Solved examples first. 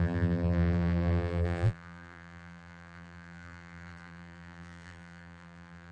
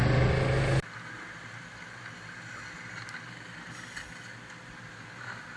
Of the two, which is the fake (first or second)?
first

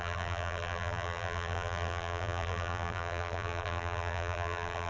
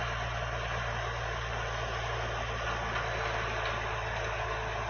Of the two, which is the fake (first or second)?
first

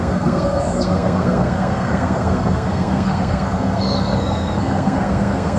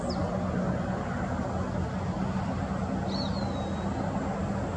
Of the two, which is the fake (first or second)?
first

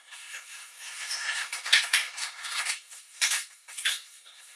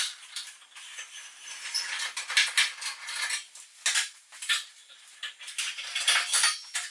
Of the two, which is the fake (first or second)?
first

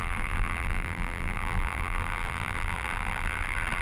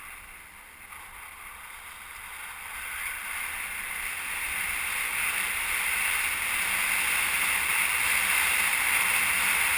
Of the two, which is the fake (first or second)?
first